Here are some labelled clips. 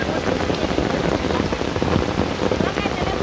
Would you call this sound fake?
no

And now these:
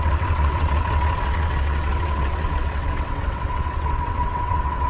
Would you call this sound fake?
yes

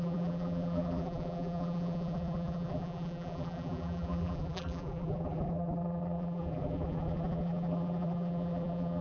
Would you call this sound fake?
yes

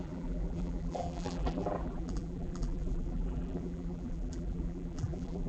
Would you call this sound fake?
yes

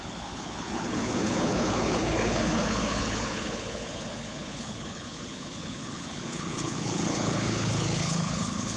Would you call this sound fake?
yes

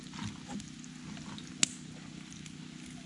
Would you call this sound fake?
no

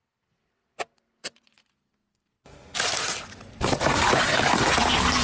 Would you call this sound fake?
no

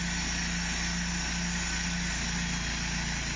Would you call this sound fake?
no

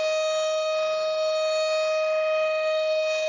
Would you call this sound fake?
yes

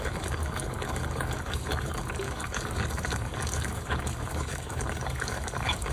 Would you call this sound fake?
yes